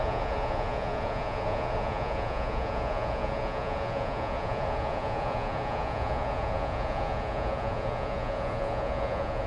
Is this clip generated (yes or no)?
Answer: yes